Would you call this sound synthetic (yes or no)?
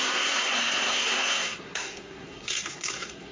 yes